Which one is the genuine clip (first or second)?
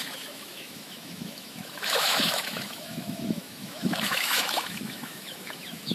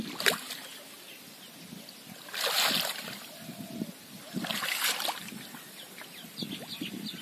second